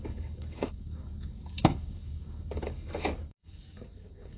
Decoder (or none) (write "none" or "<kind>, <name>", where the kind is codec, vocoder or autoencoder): codec, DAC